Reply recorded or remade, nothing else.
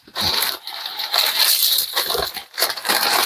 remade